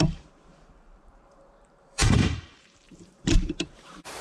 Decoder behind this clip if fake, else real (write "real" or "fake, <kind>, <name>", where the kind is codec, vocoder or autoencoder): fake, vocoder, BigVGAN v2